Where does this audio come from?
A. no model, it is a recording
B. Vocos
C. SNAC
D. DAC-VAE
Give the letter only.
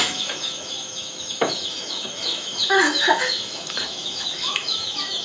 D